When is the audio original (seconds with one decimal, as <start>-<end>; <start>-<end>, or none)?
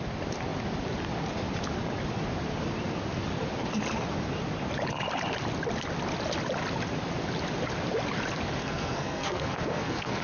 0.0-8.6